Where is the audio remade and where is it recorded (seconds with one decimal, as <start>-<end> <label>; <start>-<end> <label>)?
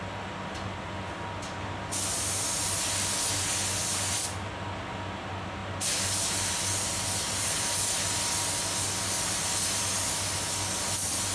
0.0-11.3 recorded